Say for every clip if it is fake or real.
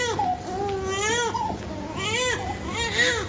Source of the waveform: real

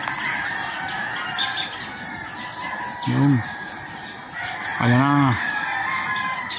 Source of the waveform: real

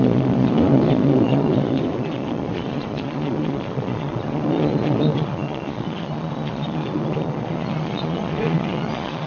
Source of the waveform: fake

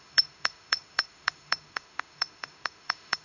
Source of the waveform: fake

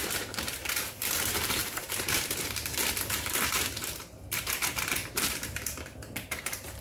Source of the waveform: fake